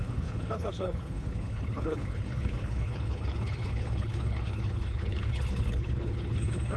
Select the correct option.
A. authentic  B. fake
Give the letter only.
B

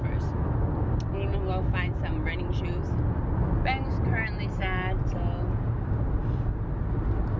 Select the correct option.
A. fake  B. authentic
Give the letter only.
B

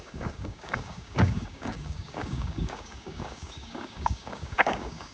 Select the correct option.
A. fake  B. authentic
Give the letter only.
A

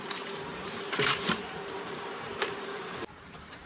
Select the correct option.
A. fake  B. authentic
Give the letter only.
A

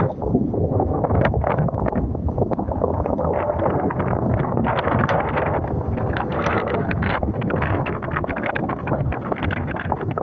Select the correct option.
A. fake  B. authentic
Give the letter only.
A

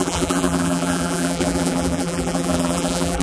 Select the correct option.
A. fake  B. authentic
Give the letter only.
A